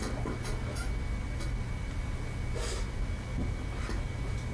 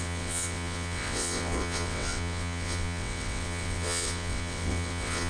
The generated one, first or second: second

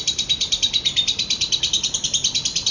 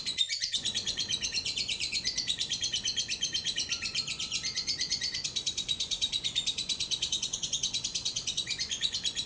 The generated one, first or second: second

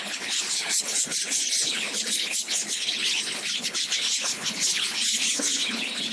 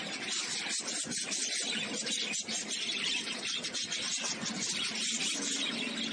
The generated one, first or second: first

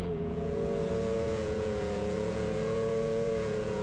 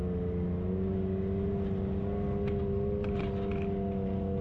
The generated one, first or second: first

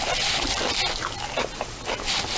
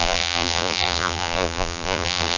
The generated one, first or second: second